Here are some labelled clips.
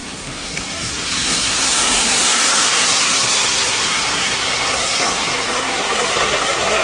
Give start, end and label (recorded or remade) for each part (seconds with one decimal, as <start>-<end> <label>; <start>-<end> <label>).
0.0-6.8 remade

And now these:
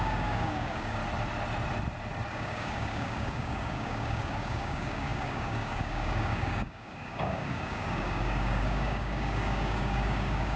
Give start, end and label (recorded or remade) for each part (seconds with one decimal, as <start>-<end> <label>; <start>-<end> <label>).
0.0-1.0 remade; 1.0-2.3 recorded; 2.3-10.6 remade

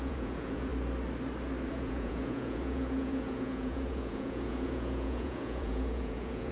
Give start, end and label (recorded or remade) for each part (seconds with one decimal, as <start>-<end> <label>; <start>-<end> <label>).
0.0-0.7 remade; 0.7-1.7 recorded; 1.7-6.5 remade